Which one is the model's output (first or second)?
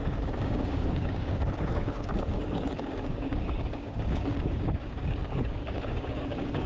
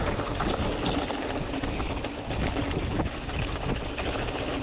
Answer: first